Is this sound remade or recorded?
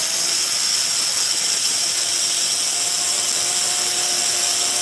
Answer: recorded